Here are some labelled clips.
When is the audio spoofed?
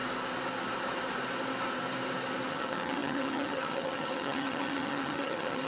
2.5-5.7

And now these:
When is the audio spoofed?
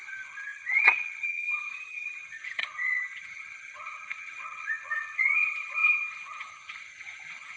0.0-7.6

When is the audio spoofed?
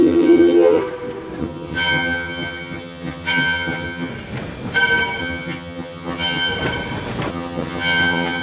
0.0-0.8; 1.4-4.1; 5.2-6.5; 7.3-8.4